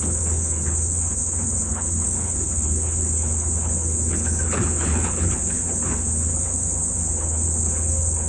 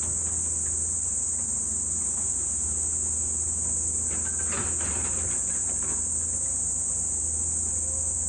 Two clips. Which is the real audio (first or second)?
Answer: second